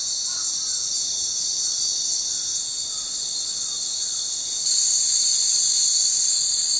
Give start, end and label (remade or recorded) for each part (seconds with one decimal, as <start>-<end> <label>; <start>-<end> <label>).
0.0-4.2 recorded; 4.2-6.8 remade